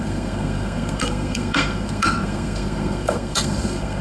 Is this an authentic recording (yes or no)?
no